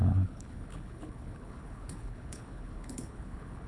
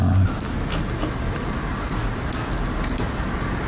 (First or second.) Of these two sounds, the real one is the second